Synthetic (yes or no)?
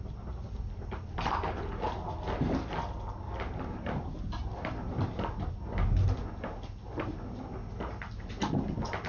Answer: no